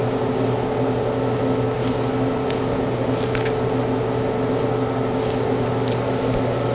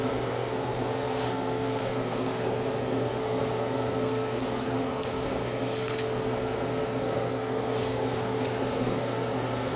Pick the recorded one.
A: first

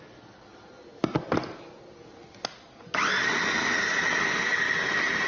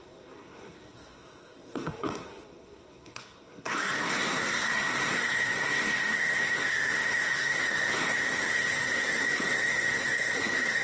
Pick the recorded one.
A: first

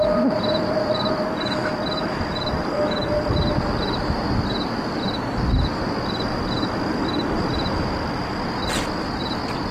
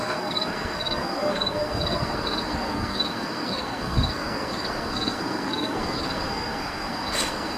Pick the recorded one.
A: first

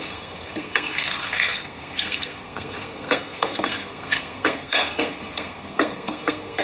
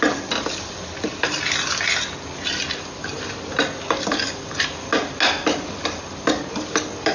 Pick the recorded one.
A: second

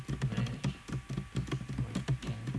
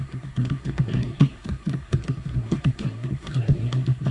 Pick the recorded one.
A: first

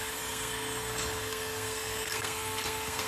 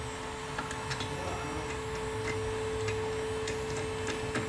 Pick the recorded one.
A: second